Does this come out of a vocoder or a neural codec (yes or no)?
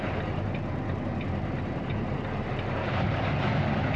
no